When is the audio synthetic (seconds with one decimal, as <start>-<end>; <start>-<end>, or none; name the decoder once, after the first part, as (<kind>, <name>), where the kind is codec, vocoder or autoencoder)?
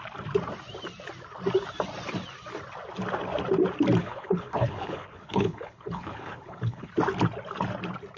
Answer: 4.0-6.9 (codec, HILCodec)